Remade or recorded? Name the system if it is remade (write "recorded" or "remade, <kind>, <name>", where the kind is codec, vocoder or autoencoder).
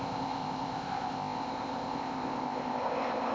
remade, codec, ZipCodec